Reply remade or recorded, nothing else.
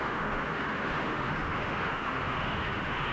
remade